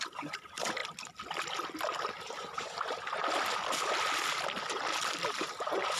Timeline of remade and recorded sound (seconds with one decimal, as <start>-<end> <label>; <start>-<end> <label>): 0.0-0.8 remade; 0.8-2.2 recorded; 2.2-3.2 remade; 3.2-5.3 recorded; 5.3-6.0 remade